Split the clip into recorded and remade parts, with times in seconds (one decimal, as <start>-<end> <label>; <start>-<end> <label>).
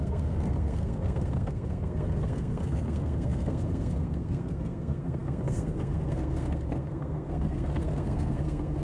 0.0-8.8 remade